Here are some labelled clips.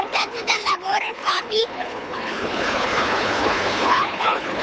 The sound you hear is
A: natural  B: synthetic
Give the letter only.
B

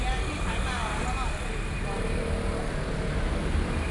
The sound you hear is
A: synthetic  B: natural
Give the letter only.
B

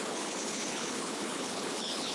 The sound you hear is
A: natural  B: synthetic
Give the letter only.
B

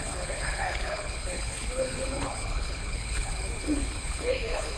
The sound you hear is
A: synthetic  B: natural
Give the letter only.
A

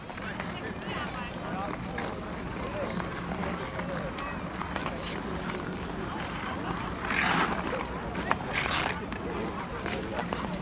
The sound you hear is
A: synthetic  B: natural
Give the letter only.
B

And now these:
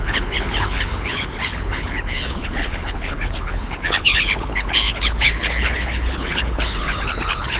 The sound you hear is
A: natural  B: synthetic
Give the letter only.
B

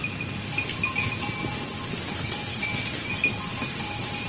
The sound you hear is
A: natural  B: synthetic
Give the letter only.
A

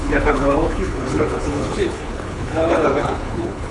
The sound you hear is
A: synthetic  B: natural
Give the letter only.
A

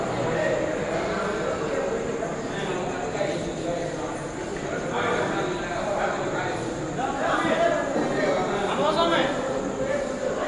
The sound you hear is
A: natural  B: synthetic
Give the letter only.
A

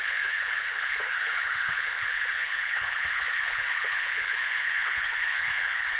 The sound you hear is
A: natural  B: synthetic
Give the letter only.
B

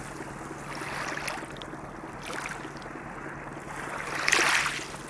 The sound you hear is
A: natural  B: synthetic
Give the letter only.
A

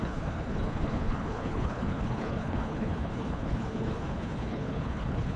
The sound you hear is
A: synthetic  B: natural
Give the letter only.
A